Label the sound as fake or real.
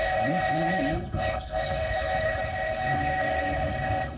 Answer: fake